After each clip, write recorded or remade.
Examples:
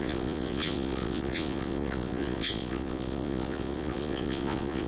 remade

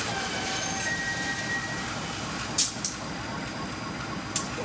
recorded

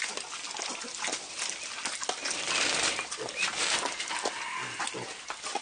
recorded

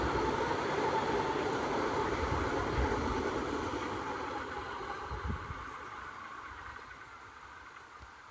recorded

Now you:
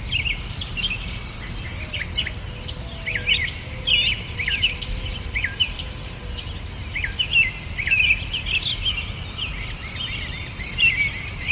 recorded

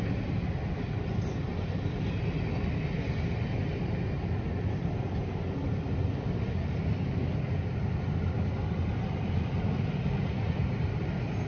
recorded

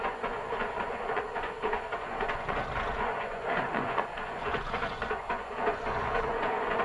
remade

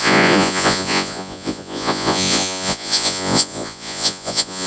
remade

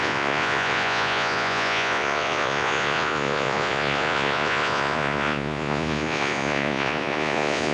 remade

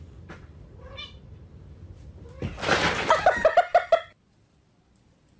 recorded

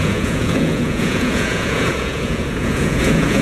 remade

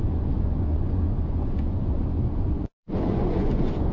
remade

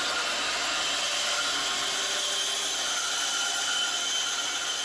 recorded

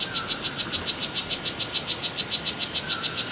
recorded